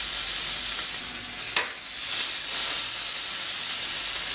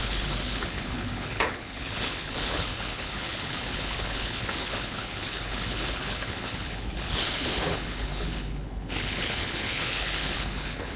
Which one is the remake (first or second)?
second